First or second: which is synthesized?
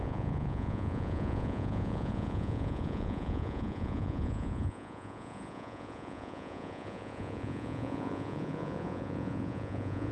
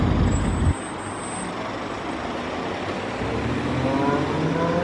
first